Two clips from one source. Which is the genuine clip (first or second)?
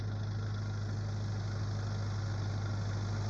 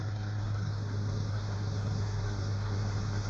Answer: first